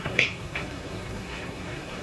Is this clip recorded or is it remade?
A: remade